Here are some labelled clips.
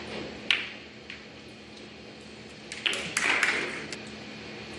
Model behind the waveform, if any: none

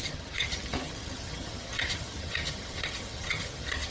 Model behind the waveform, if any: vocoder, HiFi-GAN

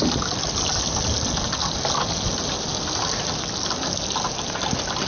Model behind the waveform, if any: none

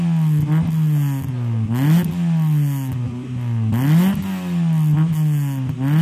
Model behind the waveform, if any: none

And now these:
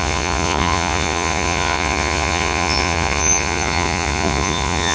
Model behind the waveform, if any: vocoder, Vocos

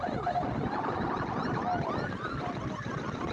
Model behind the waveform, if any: none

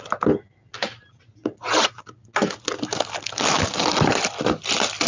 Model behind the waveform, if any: none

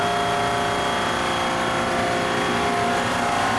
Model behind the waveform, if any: none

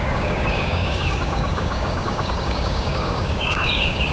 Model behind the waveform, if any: codec, DAC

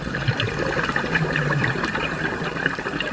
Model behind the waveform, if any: none